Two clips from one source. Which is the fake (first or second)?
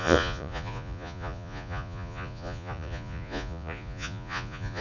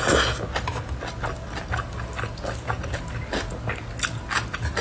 first